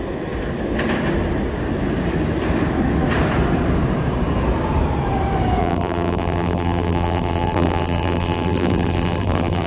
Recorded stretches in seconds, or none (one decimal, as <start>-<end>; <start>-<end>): 0.0-5.6